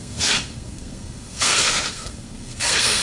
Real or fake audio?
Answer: fake